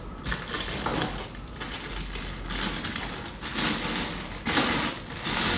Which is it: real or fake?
real